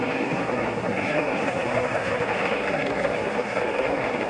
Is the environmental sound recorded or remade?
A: remade